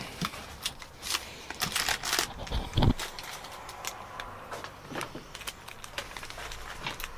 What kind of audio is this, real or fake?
real